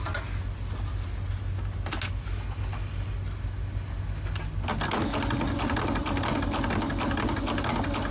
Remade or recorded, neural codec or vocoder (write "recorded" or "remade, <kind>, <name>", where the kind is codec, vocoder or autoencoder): recorded